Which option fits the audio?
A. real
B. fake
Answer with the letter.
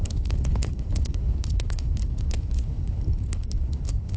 B